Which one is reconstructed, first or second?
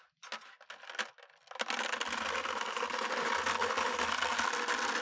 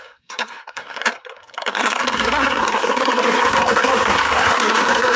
second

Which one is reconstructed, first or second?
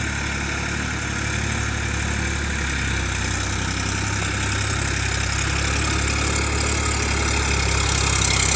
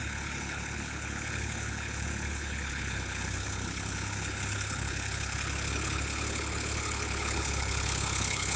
second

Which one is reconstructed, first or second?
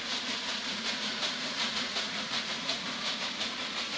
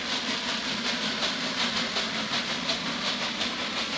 first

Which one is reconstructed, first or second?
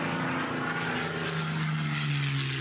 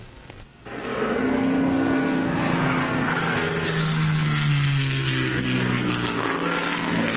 second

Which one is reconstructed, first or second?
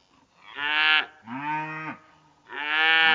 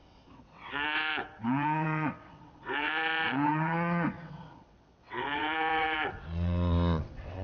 second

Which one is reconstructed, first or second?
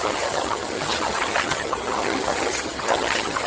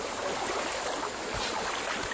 first